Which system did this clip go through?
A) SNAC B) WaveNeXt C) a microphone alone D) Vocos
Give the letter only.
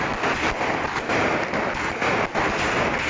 C